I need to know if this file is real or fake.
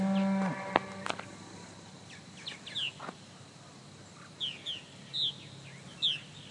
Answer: real